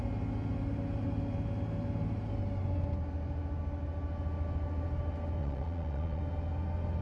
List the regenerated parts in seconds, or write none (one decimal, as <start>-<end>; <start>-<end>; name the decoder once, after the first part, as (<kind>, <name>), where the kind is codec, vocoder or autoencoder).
5.4-6.2 (vocoder, Vocos)